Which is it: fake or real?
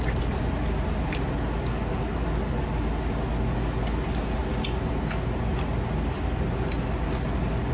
real